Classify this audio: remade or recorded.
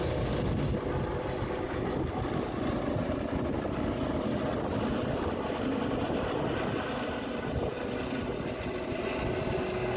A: recorded